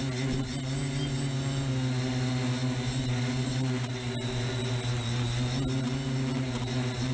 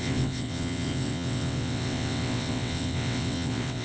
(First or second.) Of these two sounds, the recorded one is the first